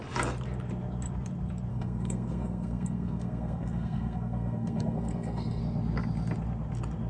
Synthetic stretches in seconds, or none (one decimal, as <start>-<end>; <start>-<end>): 1.7-5.6